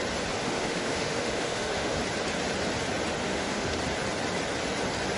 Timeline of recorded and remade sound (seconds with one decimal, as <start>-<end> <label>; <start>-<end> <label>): 0.0-0.4 recorded; 0.4-2.0 remade; 2.0-3.2 recorded; 3.2-3.8 remade; 3.8-5.2 recorded